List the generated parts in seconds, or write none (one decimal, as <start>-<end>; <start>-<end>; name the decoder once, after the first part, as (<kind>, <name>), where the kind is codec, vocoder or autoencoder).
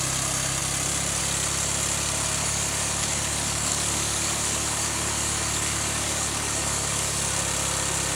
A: 2.4-7.3 (codec, DAC)